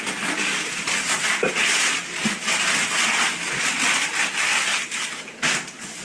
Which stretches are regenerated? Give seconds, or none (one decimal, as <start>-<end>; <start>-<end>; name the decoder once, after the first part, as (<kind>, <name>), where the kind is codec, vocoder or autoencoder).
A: 4.5-5.0 (vocoder, BigVGAN v2)